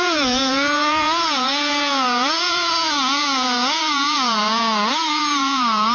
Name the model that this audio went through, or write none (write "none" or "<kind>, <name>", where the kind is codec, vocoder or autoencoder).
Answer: vocoder, Vocos